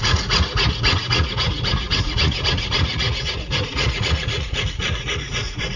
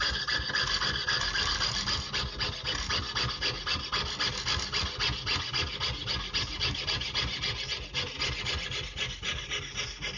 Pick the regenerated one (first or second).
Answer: first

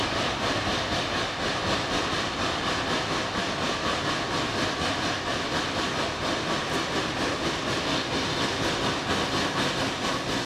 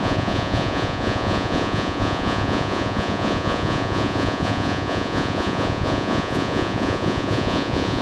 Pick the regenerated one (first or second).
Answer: second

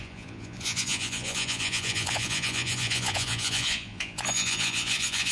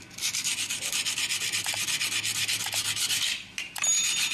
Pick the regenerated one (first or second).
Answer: first